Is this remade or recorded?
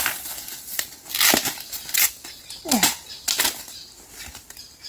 recorded